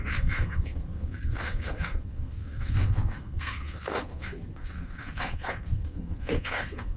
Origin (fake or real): fake